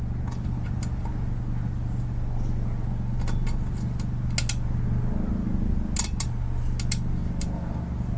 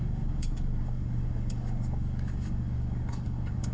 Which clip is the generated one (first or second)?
second